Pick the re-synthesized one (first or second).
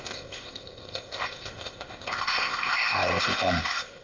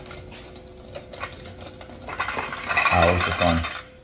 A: first